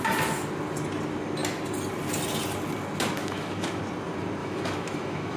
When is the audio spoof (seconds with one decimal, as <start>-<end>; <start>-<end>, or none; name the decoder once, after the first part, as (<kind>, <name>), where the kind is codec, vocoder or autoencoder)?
3.2-3.8 (autoencoder, DAC-VAE); 4.4-5.4